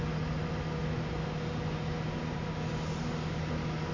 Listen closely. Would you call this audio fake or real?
real